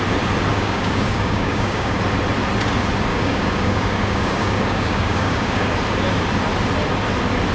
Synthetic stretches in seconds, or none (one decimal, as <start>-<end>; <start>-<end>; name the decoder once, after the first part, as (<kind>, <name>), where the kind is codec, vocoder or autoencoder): 0.5-2.0 (codec, DAC); 3.1-5.7